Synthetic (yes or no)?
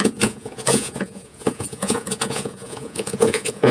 yes